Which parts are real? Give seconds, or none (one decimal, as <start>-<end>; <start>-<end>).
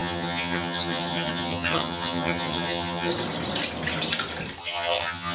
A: 3.1-4.6